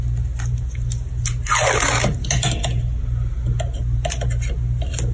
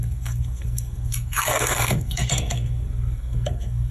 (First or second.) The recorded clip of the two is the first